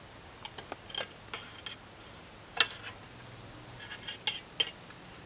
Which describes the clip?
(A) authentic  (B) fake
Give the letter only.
A